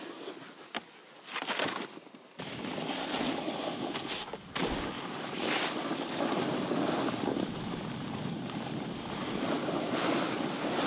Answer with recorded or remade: recorded